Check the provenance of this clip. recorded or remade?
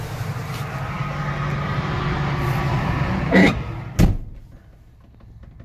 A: recorded